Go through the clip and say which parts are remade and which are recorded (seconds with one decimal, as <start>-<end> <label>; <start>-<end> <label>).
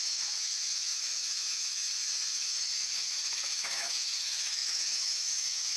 0.0-5.8 remade